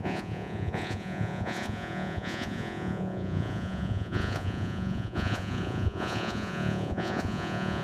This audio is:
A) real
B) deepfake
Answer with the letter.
B